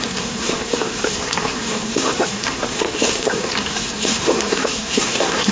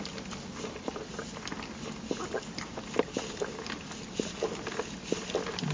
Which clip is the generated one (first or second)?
first